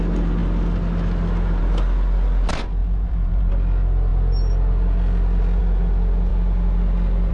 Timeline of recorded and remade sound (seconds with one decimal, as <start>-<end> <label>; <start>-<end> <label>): 0.0-2.8 recorded; 2.8-3.5 remade; 3.5-7.3 recorded

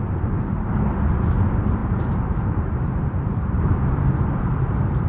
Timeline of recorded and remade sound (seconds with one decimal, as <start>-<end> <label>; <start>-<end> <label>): 0.0-5.1 remade

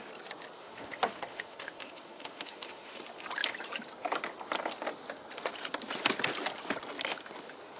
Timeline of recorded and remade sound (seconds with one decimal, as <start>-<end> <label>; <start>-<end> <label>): 0.0-0.6 recorded; 0.6-3.0 remade; 3.0-7.8 recorded

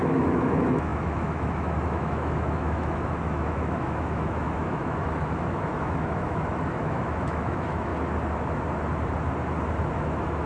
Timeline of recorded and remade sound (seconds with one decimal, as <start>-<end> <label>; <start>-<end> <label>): 0.0-7.9 remade; 7.9-9.9 recorded; 9.9-10.5 remade